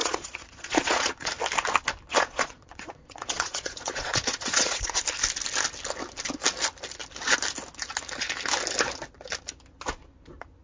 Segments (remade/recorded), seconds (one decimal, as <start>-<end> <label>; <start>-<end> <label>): 0.0-1.3 remade; 1.3-2.1 recorded; 2.1-5.0 remade; 5.0-10.6 recorded